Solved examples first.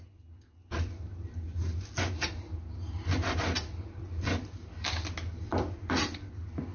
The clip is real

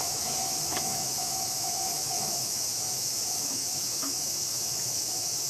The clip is fake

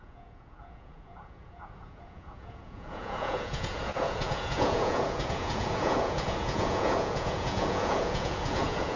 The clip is fake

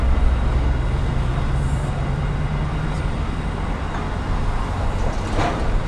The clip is real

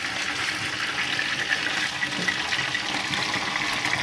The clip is real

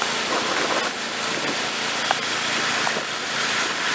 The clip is real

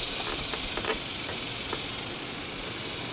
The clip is real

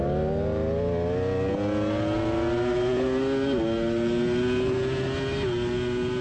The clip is real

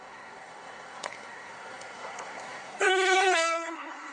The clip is fake